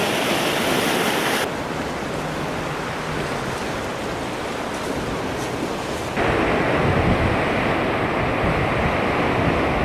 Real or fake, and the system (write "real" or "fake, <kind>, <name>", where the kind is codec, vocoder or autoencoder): real